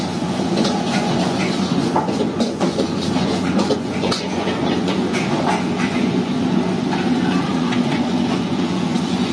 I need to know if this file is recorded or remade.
remade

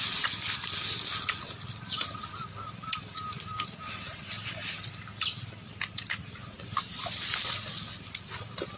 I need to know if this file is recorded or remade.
recorded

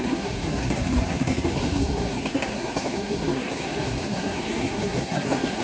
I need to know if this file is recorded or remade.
remade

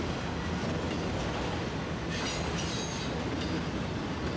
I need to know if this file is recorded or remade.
recorded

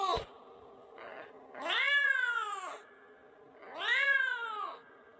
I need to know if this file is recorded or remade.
recorded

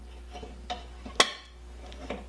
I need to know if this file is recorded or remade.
recorded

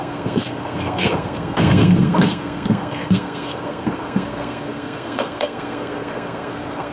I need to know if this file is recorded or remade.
remade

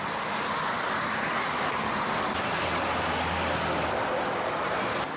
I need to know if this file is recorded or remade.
recorded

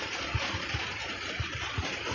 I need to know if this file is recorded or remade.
recorded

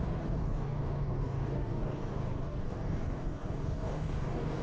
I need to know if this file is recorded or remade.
remade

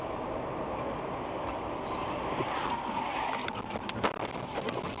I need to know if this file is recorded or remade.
recorded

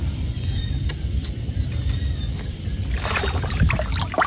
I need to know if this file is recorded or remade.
remade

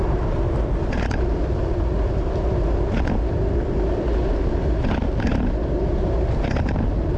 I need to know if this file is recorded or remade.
recorded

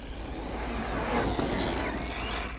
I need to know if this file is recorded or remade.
recorded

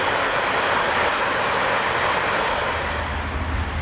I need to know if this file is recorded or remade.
recorded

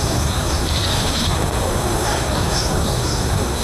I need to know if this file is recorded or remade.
remade